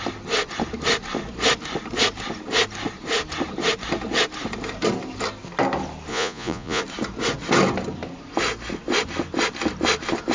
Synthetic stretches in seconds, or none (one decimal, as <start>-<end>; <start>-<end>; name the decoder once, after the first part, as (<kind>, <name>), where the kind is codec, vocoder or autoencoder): 6.1-6.8 (vocoder, Vocos)